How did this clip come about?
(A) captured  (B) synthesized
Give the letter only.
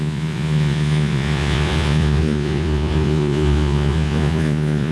B